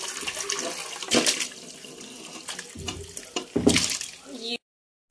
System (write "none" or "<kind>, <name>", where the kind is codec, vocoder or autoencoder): none